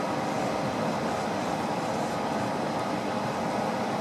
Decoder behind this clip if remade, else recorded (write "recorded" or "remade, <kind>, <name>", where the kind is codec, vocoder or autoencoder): recorded